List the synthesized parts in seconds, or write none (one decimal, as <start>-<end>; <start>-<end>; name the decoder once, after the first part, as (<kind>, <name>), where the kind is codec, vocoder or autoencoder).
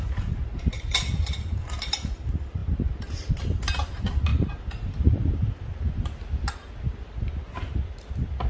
none